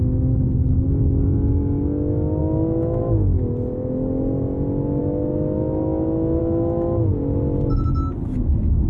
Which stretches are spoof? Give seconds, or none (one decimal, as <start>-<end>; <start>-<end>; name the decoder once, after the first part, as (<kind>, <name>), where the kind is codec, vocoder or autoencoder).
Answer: 2.4-3.0 (autoencoder, DAC-VAE); 5.0-6.4